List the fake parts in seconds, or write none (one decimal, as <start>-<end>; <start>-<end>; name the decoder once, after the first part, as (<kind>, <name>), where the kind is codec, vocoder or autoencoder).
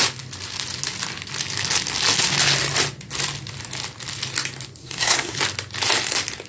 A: 4.8-5.4 (codec, SNAC)